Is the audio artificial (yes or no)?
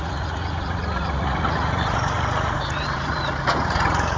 yes